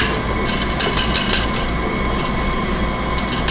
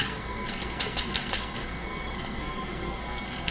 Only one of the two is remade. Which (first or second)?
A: second